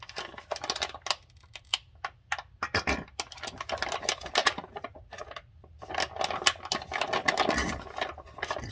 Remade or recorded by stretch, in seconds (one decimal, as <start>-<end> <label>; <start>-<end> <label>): 0.0-4.4 recorded; 4.4-5.3 remade; 5.3-8.7 recorded